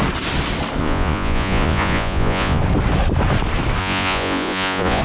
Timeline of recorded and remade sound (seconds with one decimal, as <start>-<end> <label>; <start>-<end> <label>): 0.0-0.8 recorded; 0.8-2.6 remade; 2.6-3.8 recorded; 3.8-5.0 remade